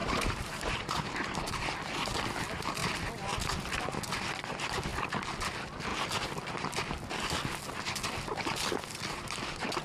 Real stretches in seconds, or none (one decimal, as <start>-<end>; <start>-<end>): 1.5-9.8